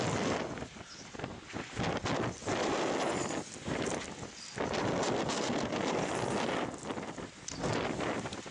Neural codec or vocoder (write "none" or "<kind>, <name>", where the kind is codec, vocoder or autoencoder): none